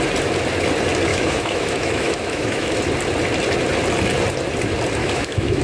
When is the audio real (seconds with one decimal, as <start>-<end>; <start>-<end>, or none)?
0.0-1.1; 2.8-5.0